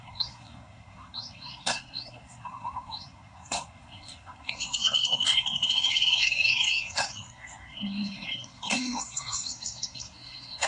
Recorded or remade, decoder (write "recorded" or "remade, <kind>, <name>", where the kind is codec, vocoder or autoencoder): remade, codec, SNAC